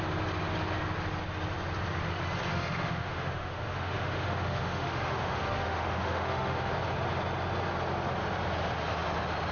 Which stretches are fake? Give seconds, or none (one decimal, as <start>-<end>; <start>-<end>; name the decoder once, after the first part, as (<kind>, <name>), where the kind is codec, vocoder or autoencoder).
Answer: 2.5-6.7 (autoencoder, DAC-VAE)